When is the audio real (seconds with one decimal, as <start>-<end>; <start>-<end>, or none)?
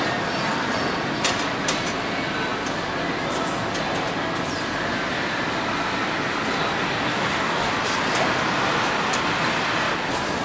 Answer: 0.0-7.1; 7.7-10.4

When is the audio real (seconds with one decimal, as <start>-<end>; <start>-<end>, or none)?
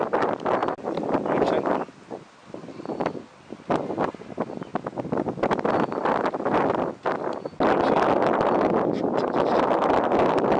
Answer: 0.0-10.6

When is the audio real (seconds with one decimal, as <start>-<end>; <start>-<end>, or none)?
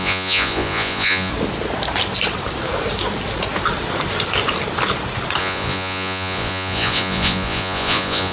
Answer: 1.3-5.4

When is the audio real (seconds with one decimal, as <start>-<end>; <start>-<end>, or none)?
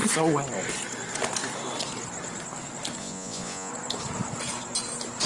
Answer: 0.0-3.0; 3.7-5.3